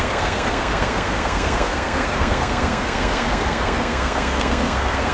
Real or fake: fake